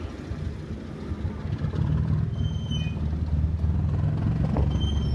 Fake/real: real